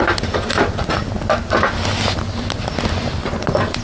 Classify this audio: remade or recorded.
remade